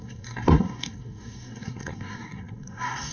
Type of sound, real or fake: fake